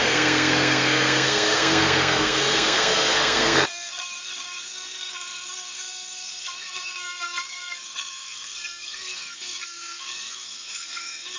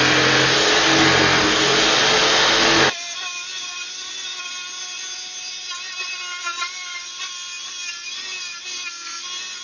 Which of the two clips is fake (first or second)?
first